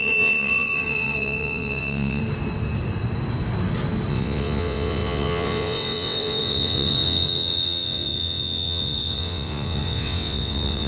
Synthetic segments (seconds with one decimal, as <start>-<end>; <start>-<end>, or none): 0.0-2.2; 4.1-10.9